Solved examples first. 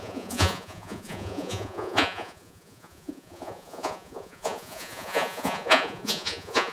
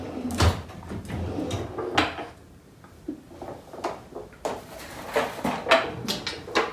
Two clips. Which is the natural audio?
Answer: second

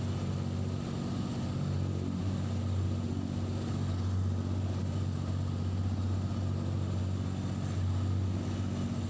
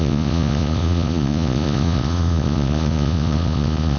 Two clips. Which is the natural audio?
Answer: first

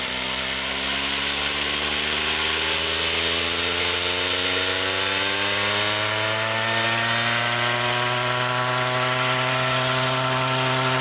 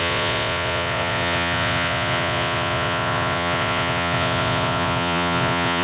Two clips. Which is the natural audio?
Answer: first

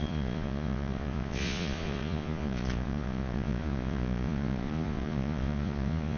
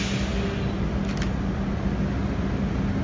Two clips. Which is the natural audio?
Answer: second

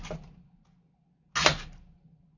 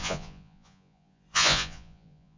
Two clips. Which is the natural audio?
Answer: first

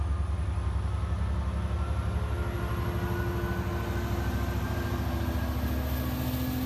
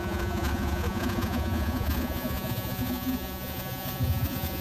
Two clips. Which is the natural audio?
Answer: first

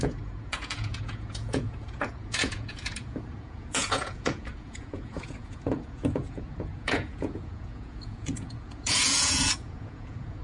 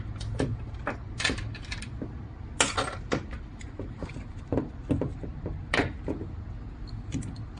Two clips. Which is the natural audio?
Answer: second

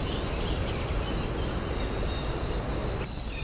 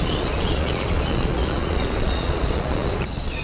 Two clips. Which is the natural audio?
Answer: first